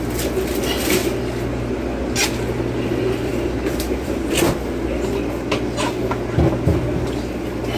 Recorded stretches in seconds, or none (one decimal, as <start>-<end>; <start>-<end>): 0.0-3.3; 4.3-7.8